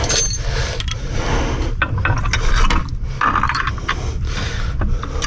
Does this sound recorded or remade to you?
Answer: recorded